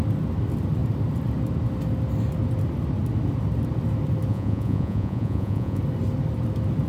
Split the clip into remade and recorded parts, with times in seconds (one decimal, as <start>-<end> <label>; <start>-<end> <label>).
0.0-4.3 recorded; 4.3-5.8 remade; 5.8-6.9 recorded